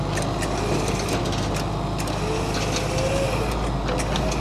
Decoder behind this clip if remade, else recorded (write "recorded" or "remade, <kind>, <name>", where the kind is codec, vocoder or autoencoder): recorded